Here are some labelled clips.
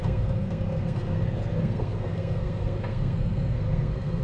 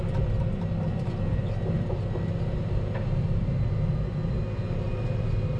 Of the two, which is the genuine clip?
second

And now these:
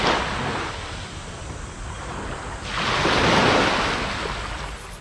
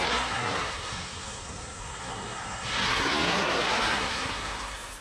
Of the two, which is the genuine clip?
first